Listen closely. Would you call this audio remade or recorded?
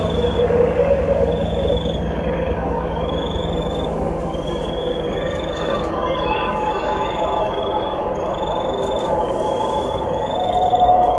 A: remade